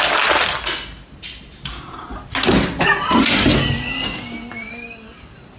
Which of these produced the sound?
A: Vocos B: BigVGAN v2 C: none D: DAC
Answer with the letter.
C